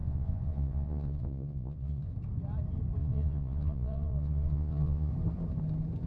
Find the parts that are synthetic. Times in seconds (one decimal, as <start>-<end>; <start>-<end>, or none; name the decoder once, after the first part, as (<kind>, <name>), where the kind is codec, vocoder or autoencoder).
0.0-2.1 (vocoder, Vocos); 3.0-5.1